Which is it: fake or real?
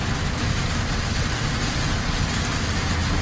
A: real